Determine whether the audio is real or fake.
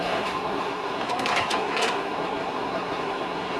fake